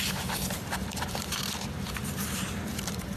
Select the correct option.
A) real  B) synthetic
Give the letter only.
B